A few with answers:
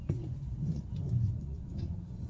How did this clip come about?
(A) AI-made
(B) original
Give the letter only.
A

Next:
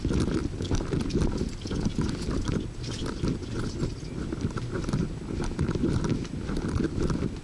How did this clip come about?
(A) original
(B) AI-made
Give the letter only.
A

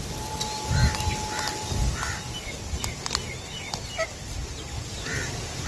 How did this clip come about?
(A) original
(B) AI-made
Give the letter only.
A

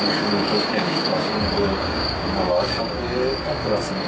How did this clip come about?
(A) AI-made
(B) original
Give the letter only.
A